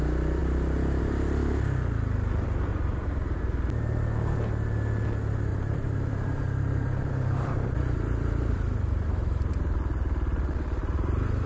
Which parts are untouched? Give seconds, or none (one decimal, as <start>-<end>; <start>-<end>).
0.0-2.7; 3.4-5.5; 9.5-10.8